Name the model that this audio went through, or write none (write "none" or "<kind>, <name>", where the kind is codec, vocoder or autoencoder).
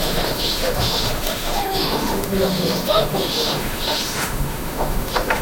autoencoder, DAC-VAE